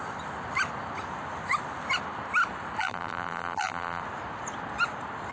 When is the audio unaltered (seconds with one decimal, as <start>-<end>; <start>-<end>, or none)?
0.0-2.8; 4.0-5.3